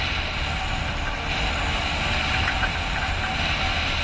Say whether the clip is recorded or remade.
recorded